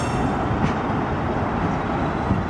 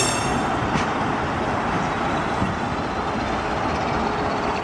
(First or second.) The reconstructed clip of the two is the second